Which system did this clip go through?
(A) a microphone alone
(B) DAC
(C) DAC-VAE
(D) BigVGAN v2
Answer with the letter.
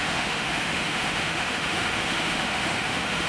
C